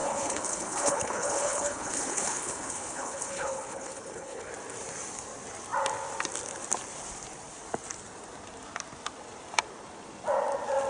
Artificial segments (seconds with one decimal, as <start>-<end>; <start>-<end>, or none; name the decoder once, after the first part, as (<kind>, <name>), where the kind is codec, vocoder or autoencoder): 0.0-4.5 (codec, HILCodec)